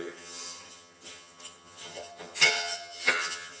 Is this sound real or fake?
fake